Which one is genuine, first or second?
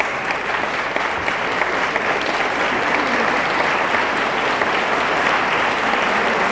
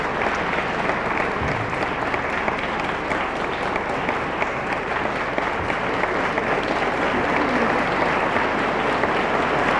second